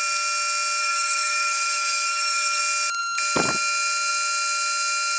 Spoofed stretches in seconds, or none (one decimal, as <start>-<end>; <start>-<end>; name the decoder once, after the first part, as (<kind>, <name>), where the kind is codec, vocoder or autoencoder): 0.8-2.6 (codec, SNAC)

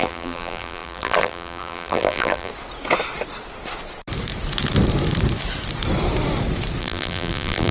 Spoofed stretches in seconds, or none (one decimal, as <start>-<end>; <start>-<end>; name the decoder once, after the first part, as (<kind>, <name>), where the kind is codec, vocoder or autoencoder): 0.0-2.5 (vocoder, BigVGAN v2); 6.8-7.7

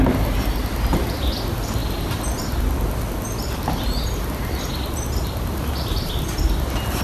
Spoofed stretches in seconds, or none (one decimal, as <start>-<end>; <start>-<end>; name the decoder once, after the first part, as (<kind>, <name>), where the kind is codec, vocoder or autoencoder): none

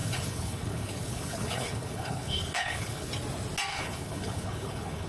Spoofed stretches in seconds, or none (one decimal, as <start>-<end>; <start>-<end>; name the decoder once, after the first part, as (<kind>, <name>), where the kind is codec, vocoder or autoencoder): 0.0-3.1 (codec, HILCodec); 3.7-5.1

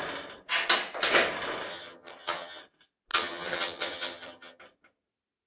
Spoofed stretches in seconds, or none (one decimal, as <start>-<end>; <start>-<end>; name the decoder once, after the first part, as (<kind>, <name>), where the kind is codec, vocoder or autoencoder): 1.7-2.6 (vocoder, HiFi-GAN); 3.1-4.6

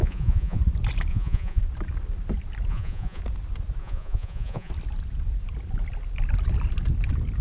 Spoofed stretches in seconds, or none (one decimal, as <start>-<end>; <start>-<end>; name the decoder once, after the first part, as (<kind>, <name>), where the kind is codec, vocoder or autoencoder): 0.0-0.6 (vocoder, Vocos); 1.1-1.6; 2.7-3.2; 3.8-4.7

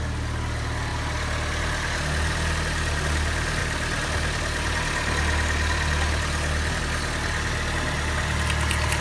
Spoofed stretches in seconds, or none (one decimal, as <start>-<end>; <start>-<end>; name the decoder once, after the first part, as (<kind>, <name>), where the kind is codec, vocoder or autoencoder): none

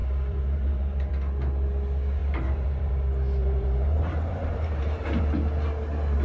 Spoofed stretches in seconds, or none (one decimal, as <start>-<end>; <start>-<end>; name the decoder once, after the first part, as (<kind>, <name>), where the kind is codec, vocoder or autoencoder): 0.0-1.1 (vocoder, BigVGAN v2); 2.2-2.9; 3.4-5.2